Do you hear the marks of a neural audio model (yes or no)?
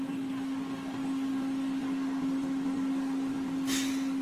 no